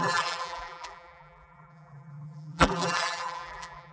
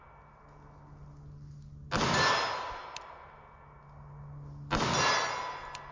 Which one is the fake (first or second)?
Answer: first